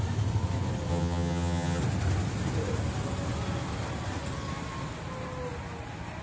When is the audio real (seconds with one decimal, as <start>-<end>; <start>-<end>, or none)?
0.0-0.9; 1.8-6.2